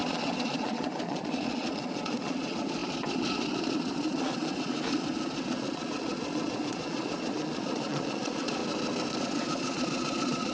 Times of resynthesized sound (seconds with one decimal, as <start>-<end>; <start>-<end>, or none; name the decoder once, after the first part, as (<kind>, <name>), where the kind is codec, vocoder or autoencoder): 0.0-8.6 (vocoder, Vocos); 9.2-10.5